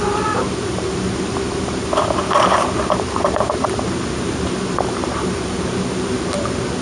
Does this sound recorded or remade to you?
remade